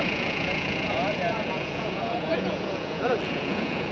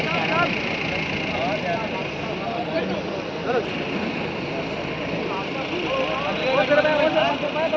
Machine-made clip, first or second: first